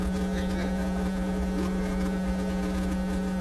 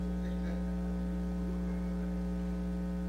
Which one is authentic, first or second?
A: second